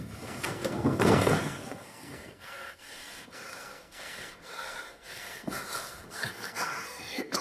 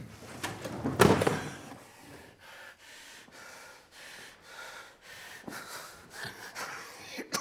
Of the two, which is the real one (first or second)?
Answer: second